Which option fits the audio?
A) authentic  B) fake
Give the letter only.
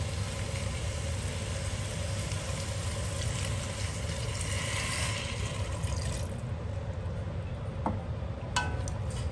A